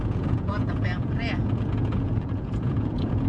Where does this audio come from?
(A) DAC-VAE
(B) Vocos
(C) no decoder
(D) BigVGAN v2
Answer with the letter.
B